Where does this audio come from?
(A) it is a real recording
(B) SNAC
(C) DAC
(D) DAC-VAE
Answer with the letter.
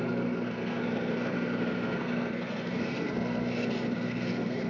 B